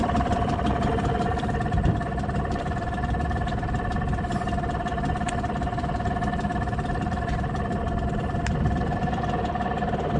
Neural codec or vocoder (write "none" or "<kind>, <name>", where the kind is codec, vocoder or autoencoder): vocoder, BigVGAN v2